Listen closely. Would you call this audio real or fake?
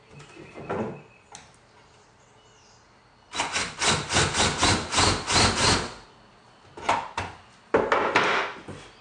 real